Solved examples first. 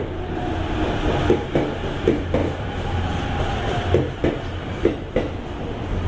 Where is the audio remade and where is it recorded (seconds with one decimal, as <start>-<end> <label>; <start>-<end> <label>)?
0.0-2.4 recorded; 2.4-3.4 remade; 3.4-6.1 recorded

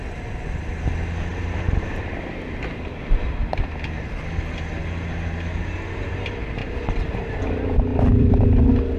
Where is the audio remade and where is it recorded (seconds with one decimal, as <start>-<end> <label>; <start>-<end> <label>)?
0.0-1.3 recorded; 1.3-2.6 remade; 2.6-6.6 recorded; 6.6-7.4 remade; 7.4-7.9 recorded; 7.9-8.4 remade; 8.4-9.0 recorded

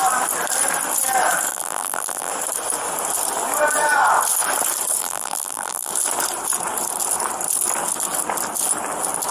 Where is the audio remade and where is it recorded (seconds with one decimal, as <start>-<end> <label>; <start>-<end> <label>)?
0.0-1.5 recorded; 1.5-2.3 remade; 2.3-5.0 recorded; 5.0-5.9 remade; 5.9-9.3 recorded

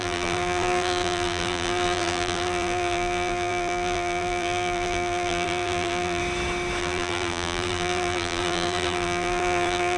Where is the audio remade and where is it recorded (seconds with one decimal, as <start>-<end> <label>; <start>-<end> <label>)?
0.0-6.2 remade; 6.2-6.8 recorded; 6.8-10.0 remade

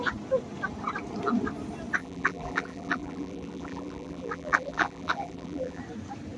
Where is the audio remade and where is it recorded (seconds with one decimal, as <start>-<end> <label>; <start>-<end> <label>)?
0.0-2.0 recorded; 2.0-5.8 remade; 5.8-6.4 recorded

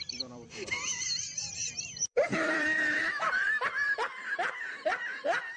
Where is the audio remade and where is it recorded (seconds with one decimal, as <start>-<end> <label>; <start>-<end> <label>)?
0.0-3.8 remade; 3.8-4.5 recorded; 4.5-5.6 remade

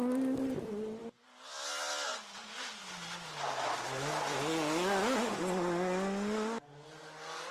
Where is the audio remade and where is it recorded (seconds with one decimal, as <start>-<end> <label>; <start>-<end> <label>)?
0.0-7.5 recorded